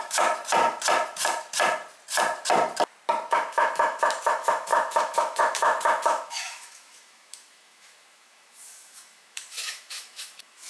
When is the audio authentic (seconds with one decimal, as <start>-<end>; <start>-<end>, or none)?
0.4-3.3

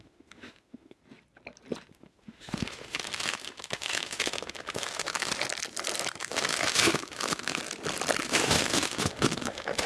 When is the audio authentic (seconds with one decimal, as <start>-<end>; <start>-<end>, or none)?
1.0-1.9; 5.3-6.2; 7.6-8.2